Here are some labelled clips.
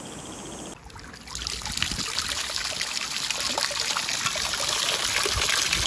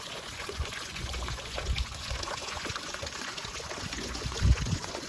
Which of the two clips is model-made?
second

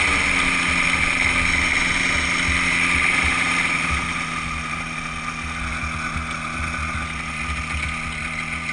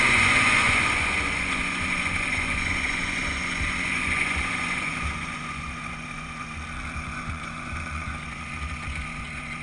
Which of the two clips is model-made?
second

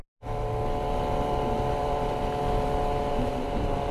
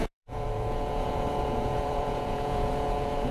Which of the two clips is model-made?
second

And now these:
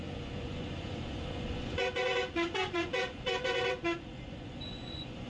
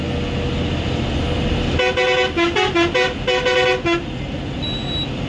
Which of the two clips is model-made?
first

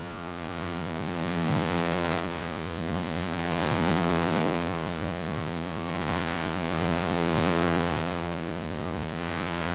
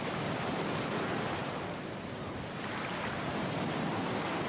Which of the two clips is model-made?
first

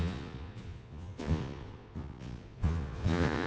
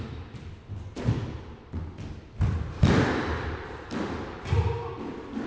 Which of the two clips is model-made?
first